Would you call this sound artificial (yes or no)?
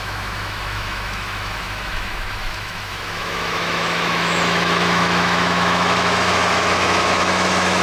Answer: yes